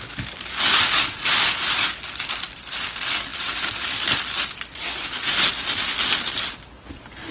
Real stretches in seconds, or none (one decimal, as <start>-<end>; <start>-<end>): 0.0-7.3